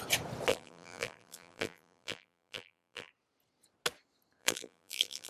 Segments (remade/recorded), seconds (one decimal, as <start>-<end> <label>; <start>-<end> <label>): 0.0-0.5 recorded; 0.5-3.1 remade; 3.1-4.4 recorded; 4.4-5.3 remade